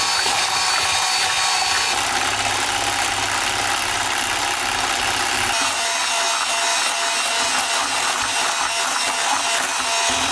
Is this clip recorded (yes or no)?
yes